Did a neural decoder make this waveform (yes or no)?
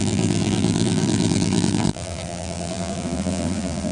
yes